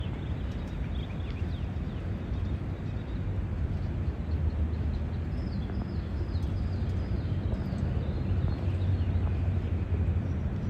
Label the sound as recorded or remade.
recorded